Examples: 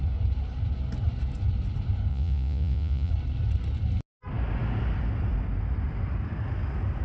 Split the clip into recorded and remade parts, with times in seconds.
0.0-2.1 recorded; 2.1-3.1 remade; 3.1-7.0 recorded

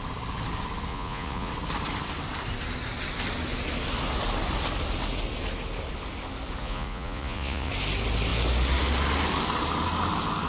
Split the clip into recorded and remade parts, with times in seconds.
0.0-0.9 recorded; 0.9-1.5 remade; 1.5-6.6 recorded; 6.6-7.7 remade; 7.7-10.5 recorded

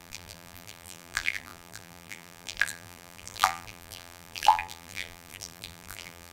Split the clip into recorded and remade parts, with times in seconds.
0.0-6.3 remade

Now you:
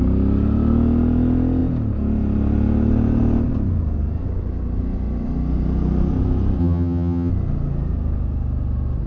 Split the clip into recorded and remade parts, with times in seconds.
0.0-6.6 recorded; 6.6-7.3 remade; 7.3-9.1 recorded

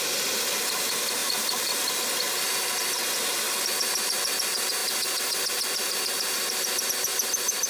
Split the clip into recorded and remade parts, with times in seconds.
0.0-1.2 recorded; 1.2-2.0 remade; 2.0-7.7 recorded

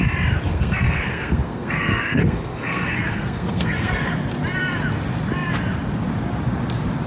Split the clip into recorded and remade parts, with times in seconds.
0.0-0.5 recorded; 0.5-4.1 remade; 4.1-7.1 recorded